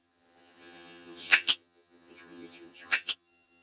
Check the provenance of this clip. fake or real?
fake